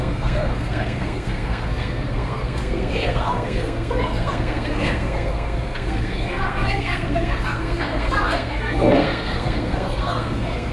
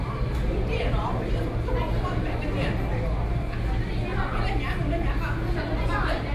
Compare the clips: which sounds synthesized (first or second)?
first